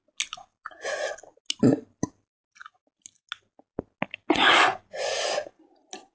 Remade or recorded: recorded